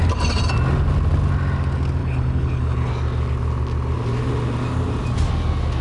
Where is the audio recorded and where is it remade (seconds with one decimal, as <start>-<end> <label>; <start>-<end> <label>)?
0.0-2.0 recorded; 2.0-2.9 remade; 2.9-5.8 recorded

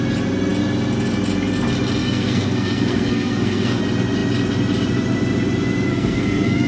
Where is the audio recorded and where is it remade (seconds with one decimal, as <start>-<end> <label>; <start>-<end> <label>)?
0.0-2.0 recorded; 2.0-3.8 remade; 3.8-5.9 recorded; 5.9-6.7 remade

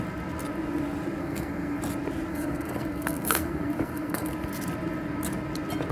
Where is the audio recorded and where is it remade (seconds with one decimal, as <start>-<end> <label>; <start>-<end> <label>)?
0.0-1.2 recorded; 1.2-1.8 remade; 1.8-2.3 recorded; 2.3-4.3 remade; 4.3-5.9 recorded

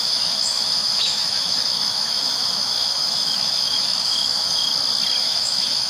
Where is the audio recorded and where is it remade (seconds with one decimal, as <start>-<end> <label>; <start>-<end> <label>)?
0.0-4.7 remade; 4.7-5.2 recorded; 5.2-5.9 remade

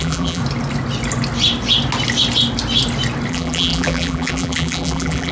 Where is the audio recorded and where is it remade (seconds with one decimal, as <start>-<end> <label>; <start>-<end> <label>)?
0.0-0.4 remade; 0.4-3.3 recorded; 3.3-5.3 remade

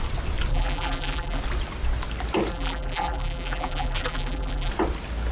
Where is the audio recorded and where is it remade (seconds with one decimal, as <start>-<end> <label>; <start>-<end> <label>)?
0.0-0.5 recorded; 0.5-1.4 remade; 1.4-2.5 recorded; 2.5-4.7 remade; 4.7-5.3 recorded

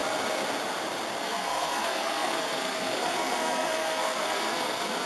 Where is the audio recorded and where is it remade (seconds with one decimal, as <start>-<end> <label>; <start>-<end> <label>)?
0.0-1.2 recorded; 1.2-5.1 remade

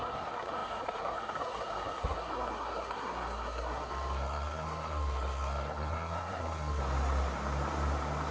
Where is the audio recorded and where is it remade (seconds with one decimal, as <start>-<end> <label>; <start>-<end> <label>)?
0.0-6.8 remade; 6.8-8.3 recorded